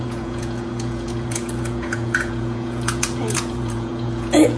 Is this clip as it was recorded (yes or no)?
no